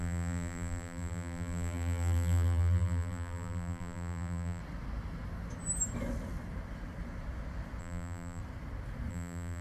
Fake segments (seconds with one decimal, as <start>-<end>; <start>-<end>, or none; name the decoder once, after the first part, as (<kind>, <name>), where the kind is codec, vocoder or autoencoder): 0.0-4.6 (vocoder, BigVGAN v2); 7.8-8.4; 9.1-9.6